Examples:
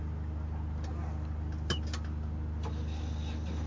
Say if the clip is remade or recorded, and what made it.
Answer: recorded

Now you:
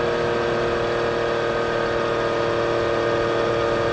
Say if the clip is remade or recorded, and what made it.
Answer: recorded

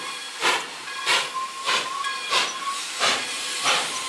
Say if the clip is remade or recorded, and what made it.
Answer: remade, vocoder, BigVGAN v2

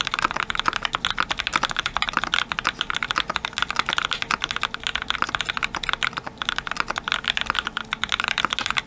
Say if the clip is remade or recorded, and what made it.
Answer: recorded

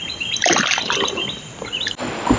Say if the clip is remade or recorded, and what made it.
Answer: remade, vocoder, BigVGAN v2